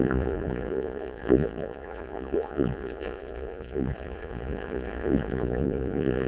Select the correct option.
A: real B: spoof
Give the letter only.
B